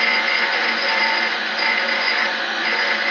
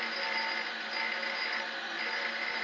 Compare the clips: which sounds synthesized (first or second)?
first